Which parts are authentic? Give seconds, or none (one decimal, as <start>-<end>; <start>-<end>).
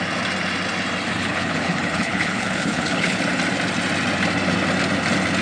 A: 0.0-1.2; 3.2-5.4